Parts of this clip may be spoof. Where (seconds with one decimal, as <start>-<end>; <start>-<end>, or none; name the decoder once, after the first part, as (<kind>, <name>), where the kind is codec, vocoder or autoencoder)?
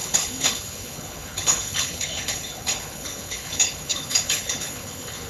0.0-5.3 (codec, HILCodec)